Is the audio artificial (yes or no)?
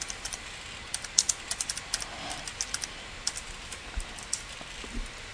no